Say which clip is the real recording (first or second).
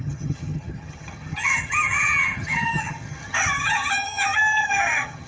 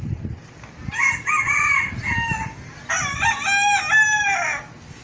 second